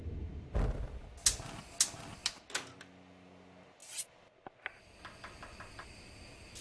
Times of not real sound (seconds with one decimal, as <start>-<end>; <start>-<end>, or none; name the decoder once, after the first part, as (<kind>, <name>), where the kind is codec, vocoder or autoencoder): none